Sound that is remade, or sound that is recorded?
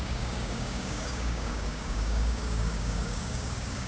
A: remade